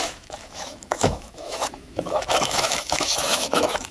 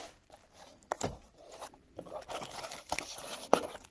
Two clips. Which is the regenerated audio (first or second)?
first